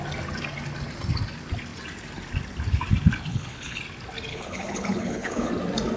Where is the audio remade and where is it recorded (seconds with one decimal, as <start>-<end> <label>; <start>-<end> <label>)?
0.0-3.3 recorded; 3.3-3.8 remade; 3.8-4.3 recorded; 4.3-5.5 remade; 5.5-6.0 recorded